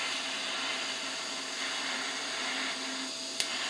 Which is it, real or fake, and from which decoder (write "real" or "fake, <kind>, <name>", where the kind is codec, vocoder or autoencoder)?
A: real